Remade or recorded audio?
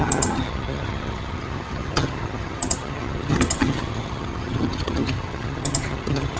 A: remade